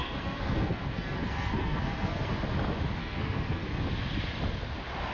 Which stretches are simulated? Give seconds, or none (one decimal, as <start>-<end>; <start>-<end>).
0.0-2.3; 3.0-3.6